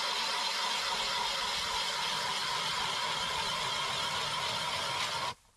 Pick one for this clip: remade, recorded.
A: recorded